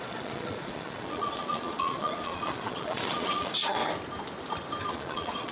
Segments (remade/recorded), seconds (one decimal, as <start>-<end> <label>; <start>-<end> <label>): 0.0-3.8 remade; 3.8-4.9 recorded; 4.9-5.5 remade